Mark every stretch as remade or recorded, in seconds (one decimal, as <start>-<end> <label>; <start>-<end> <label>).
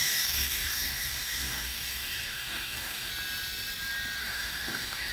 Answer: 0.0-3.1 remade; 3.1-4.2 recorded; 4.2-5.1 remade